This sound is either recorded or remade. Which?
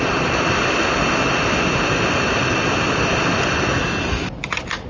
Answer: recorded